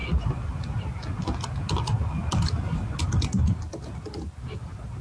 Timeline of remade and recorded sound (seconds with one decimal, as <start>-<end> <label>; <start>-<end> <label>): 0.0-5.0 recorded